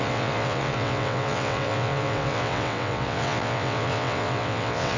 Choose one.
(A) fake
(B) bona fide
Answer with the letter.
A